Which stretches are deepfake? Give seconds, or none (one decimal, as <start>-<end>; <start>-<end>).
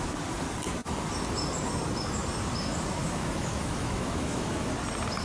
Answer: 3.0-4.7